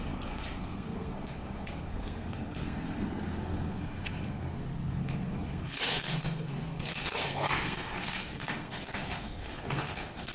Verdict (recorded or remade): remade